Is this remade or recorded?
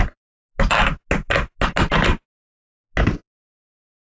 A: recorded